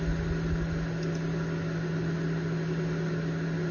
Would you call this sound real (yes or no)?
yes